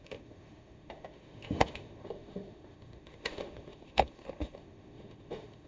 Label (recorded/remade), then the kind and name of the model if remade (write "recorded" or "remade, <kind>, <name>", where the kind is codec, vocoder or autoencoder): remade, autoencoder, DAC-VAE